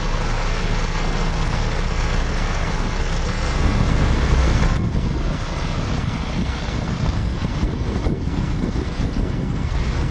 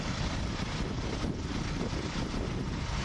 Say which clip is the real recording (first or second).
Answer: second